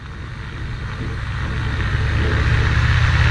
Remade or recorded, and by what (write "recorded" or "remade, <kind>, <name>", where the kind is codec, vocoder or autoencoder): recorded